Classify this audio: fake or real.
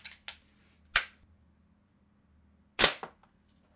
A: real